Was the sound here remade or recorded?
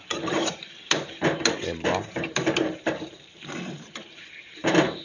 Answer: remade